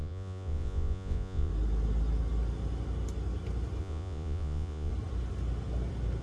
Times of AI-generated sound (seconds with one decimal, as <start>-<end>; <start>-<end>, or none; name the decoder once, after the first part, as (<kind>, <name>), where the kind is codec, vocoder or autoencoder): 0.0-1.5 (vocoder, Vocos); 3.8-4.9